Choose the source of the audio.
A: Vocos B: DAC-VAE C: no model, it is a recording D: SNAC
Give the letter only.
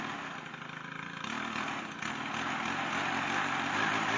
C